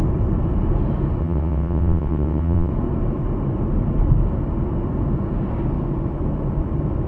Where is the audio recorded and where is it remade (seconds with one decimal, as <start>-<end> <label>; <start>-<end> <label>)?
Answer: 0.0-1.2 recorded; 1.2-2.7 remade; 2.7-7.1 recorded